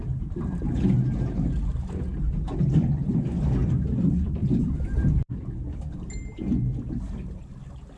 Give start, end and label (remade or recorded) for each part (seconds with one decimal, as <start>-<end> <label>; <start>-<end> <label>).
0.0-2.1 recorded; 2.1-3.1 remade; 3.1-3.6 recorded; 3.6-5.9 remade; 5.9-8.0 recorded